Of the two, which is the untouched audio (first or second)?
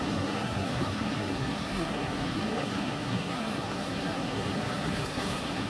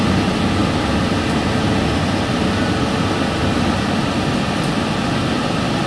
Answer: second